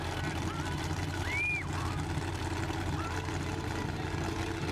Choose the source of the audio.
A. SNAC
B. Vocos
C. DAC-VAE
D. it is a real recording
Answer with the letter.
D